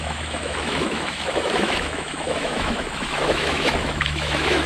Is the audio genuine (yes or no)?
no